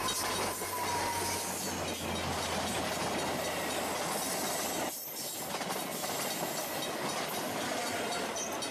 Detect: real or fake real